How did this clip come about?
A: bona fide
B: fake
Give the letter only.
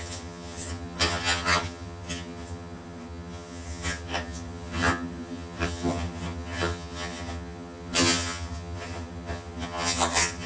B